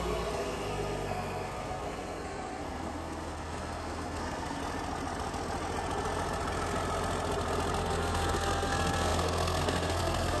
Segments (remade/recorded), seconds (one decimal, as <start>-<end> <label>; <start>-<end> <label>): 0.0-4.6 remade; 4.6-7.8 recorded; 7.8-10.4 remade